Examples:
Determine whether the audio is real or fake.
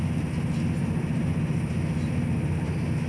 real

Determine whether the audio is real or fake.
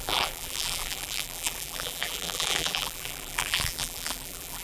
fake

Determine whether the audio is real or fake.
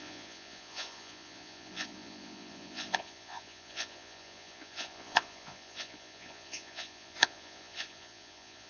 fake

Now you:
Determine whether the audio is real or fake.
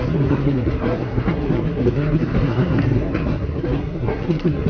fake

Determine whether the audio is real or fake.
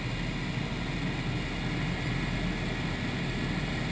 real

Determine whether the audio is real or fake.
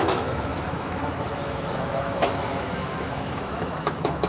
fake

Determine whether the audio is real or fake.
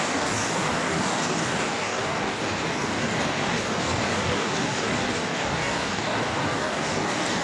fake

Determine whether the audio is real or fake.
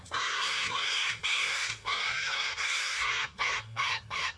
fake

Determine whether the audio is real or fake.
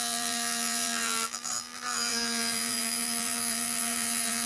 fake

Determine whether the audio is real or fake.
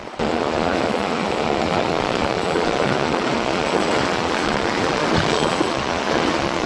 fake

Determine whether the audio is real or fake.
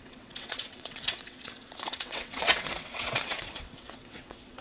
fake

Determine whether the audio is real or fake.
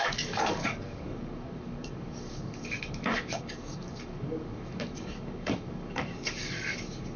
fake